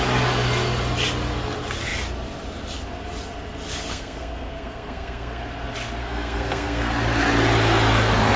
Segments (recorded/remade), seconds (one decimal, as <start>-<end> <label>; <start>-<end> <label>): 0.0-3.9 recorded; 3.9-5.4 remade; 5.4-6.0 recorded; 6.0-6.9 remade; 6.9-8.4 recorded